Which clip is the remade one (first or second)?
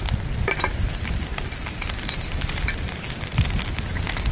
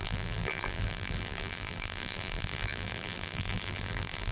second